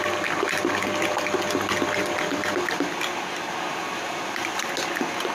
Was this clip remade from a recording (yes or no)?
no